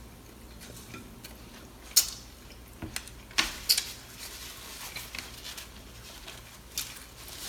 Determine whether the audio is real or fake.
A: real